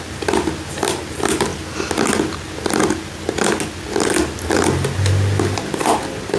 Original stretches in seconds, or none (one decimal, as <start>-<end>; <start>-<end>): 0.0-6.4